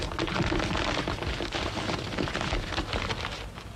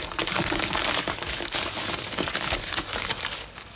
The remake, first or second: second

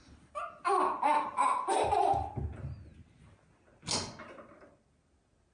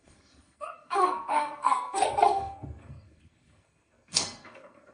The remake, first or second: second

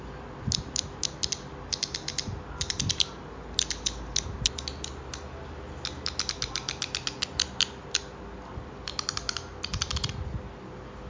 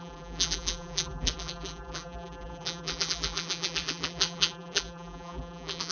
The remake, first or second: second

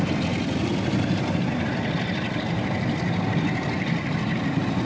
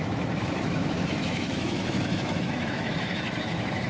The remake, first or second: second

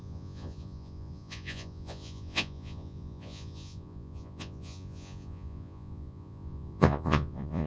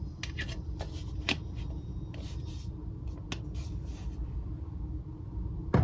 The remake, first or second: first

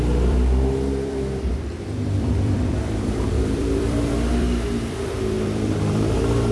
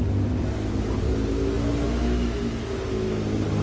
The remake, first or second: first